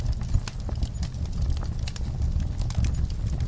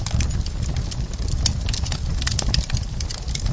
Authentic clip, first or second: first